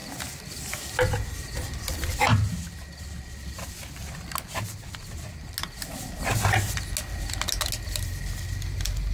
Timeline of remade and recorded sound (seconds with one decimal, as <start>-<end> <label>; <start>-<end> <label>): 0.0-9.1 recorded